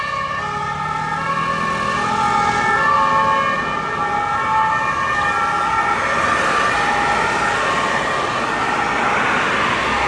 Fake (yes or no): no